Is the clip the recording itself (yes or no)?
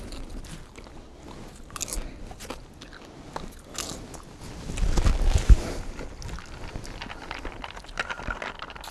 yes